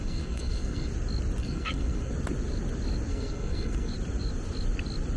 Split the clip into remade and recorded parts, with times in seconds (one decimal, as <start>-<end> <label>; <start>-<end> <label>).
0.0-0.9 remade; 0.9-1.4 recorded; 1.4-2.1 remade; 2.1-3.1 recorded; 3.1-3.9 remade; 3.9-5.2 recorded